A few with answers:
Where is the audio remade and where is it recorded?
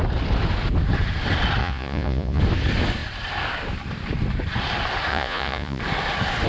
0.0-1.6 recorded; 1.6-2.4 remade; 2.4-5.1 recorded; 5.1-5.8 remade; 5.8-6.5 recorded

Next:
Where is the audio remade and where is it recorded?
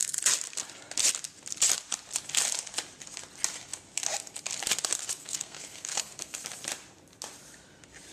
0.0-5.2 recorded; 5.2-6.4 remade; 6.4-8.1 recorded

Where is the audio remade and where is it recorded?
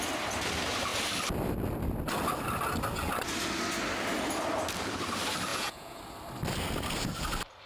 0.0-5.5 recorded; 5.5-6.0 remade; 6.0-7.7 recorded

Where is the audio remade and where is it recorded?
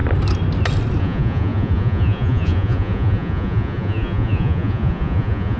0.0-1.0 recorded; 1.0-5.6 remade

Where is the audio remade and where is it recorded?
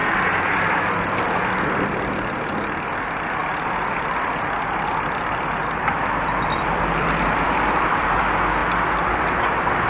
0.0-3.4 recorded; 3.4-8.2 remade; 8.2-9.9 recorded